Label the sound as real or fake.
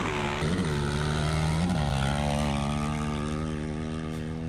real